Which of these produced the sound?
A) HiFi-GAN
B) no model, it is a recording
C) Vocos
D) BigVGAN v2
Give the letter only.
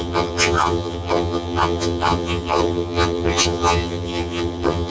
A